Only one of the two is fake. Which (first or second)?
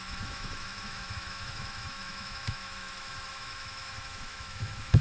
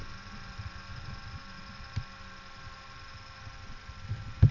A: first